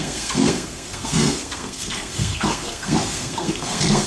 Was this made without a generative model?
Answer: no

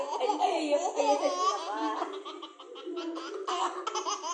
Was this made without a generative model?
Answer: yes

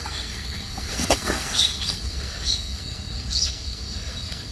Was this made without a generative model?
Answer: no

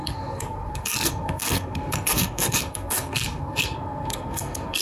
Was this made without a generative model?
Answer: no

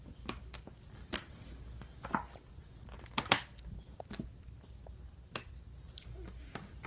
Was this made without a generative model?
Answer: yes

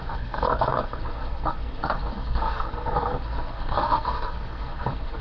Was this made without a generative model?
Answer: no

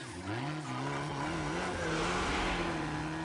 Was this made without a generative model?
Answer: yes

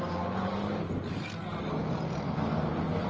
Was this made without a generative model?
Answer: yes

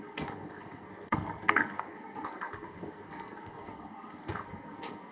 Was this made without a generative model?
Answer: no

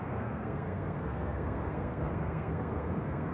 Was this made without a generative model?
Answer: no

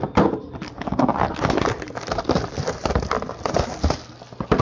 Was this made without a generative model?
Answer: yes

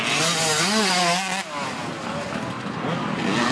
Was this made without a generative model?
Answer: yes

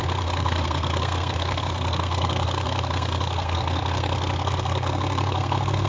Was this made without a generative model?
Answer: no